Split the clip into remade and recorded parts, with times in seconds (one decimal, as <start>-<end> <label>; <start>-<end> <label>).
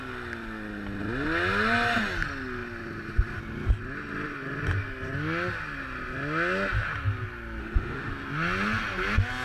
0.0-7.6 recorded; 7.6-8.1 remade; 8.1-9.4 recorded